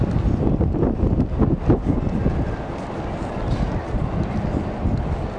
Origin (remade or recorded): recorded